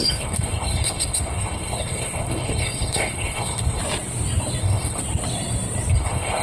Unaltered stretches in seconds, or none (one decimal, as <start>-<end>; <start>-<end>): 3.8-4.6; 5.0-5.9